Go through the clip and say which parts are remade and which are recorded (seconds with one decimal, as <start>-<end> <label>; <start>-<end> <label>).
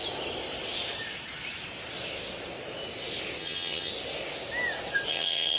0.0-3.4 recorded; 3.4-3.9 remade; 3.9-5.1 recorded; 5.1-5.6 remade